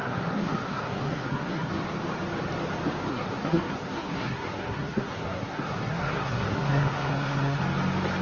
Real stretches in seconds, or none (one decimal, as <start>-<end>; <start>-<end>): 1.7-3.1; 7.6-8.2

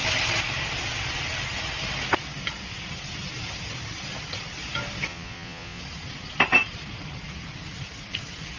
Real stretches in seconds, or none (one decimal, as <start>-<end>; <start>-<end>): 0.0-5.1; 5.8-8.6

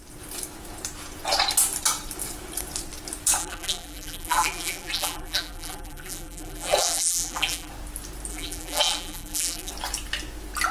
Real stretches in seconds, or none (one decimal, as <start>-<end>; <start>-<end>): 0.0-3.4; 7.7-8.3; 9.7-10.7

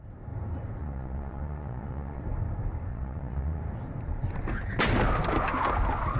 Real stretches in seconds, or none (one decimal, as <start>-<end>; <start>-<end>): 0.0-0.8; 2.2-2.9; 3.6-6.2

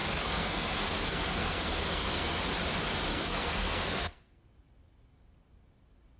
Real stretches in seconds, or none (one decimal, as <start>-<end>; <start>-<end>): 2.4-3.1; 4.4-6.2

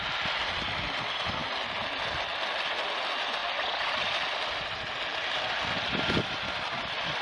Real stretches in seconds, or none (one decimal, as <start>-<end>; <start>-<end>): 0.0-1.4; 2.0-3.4; 4.0-7.2

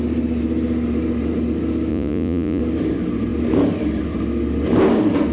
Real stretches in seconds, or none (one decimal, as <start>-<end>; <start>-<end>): 0.0-1.9; 2.6-5.3

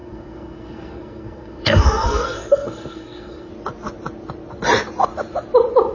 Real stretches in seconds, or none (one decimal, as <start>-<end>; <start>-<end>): 3.5-5.9